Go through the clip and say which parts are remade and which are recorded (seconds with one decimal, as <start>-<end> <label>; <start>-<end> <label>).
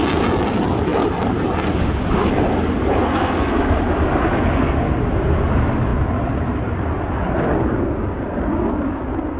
0.0-3.0 recorded; 3.0-3.5 remade; 3.5-9.4 recorded